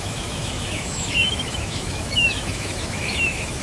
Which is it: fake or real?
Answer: fake